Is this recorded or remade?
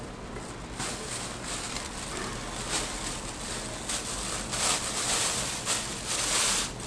recorded